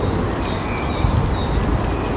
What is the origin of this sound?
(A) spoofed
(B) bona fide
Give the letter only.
B